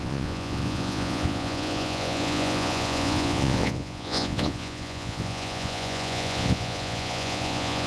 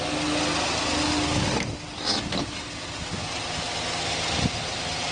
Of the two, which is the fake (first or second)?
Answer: first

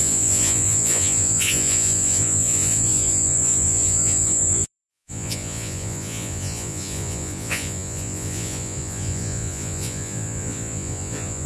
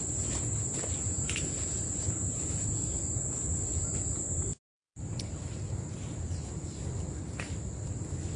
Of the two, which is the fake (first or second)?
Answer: first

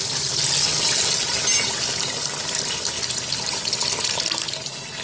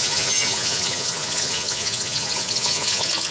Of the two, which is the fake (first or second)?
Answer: second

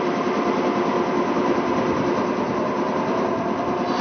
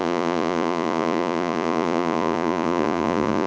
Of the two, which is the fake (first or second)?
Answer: second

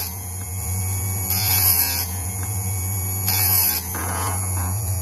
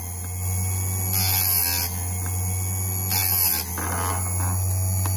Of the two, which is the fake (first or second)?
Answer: first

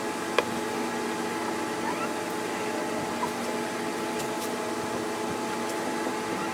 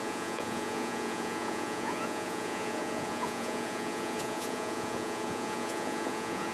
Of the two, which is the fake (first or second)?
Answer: second